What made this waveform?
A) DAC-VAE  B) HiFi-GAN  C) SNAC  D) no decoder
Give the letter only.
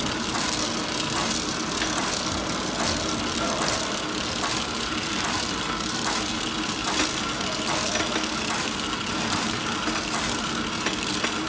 D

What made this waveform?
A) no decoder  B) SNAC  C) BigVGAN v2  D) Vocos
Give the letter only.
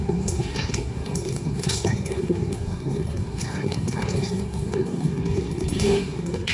B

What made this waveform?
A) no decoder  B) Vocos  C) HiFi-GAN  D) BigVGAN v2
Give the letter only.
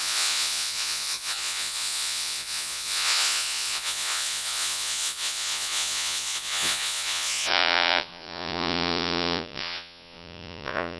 B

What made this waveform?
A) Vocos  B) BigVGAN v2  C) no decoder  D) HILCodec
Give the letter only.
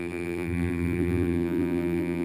B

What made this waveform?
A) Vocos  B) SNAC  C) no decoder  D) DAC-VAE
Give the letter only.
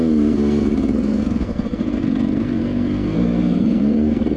B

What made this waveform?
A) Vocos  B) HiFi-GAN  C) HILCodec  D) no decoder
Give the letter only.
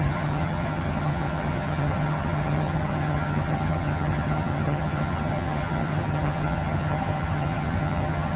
B